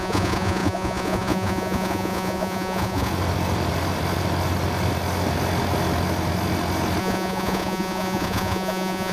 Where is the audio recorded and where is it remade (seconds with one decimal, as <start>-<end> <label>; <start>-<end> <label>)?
0.0-3.1 remade; 3.1-7.0 recorded; 7.0-9.1 remade